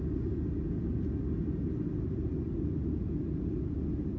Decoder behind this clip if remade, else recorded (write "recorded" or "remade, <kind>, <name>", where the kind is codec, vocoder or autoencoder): recorded